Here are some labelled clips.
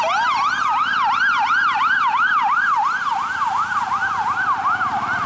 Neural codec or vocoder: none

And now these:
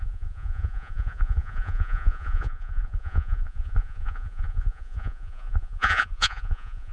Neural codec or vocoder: vocoder, Vocos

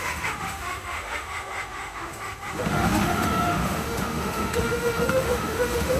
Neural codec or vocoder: autoencoder, DAC-VAE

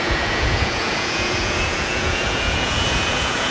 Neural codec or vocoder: vocoder, Vocos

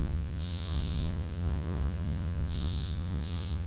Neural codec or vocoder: vocoder, Vocos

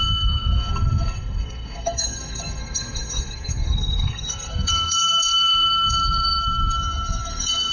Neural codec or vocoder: codec, SNAC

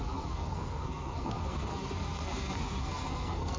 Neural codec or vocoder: codec, SNAC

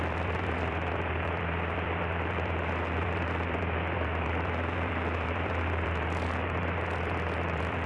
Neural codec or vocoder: vocoder, BigVGAN v2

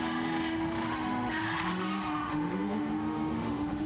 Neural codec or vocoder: autoencoder, DAC-VAE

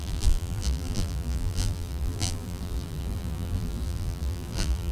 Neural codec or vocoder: vocoder, BigVGAN v2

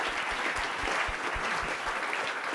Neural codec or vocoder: none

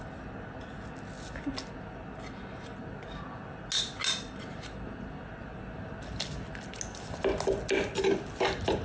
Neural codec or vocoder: none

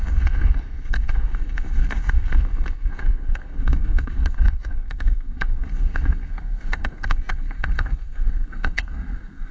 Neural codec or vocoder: codec, SNAC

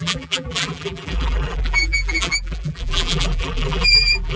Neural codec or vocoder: vocoder, BigVGAN v2